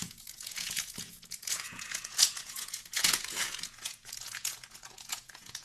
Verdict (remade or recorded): remade